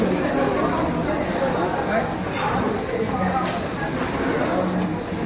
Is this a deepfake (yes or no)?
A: no